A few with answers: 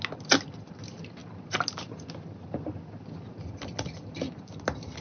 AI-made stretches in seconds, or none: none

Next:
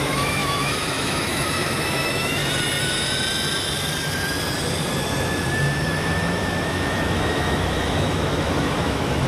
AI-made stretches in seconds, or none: 0.0-2.4; 5.8-9.3

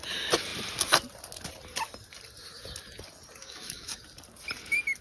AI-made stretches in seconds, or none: 3.4-4.0

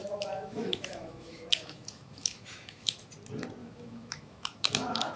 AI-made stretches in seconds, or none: 0.0-3.1; 3.6-5.2

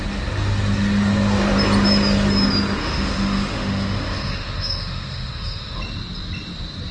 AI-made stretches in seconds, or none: 2.8-5.8

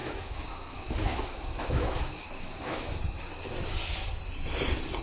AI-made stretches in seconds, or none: 0.0-3.0

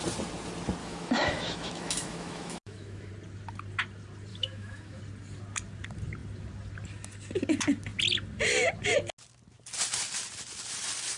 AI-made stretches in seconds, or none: 0.8-3.1; 4.3-5.0

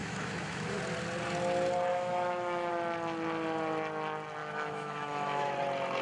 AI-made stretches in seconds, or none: 0.0-0.8; 1.9-2.7; 4.4-5.5